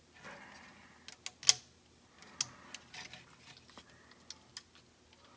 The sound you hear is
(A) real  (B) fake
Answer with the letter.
A